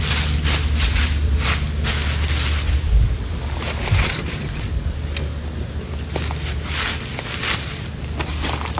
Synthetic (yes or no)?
no